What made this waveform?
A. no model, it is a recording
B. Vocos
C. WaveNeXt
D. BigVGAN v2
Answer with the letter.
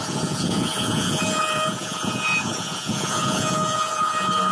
B